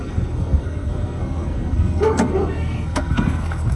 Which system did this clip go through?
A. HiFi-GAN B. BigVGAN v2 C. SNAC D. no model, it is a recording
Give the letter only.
C